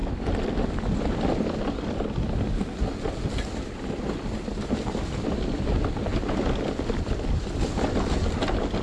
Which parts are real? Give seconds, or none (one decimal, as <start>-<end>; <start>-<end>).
0.0-8.8